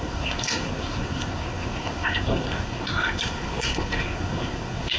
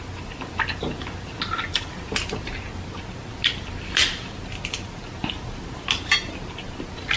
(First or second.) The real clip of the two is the second